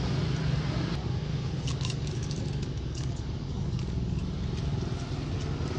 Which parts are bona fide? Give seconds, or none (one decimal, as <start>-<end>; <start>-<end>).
0.0-1.3; 4.2-5.8